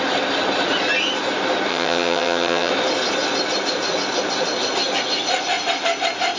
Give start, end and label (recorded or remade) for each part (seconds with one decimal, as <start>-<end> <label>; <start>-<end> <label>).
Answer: 0.0-1.7 recorded; 1.7-2.7 remade; 2.7-6.4 recorded